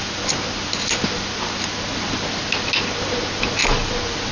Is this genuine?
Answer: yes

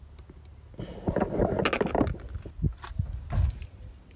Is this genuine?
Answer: yes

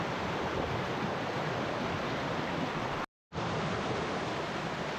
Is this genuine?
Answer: yes